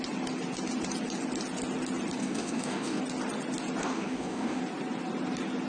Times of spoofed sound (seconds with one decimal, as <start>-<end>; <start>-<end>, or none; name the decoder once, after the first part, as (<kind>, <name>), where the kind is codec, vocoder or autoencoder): 2.2-3.0 (codec, DAC); 3.8-4.6